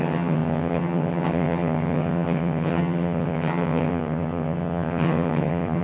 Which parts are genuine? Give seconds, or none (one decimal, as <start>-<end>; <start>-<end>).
none